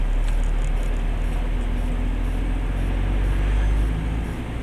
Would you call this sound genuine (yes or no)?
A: yes